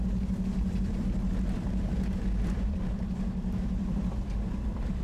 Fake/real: fake